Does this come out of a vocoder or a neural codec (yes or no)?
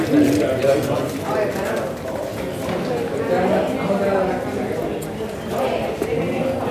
no